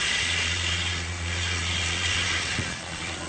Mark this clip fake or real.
fake